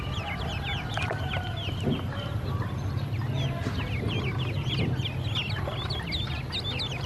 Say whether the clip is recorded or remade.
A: recorded